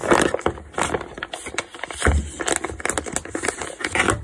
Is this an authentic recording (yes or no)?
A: yes